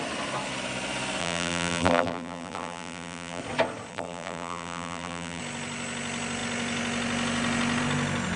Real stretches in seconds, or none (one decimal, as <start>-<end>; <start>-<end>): 0.0-1.2; 3.4-3.9; 5.4-8.4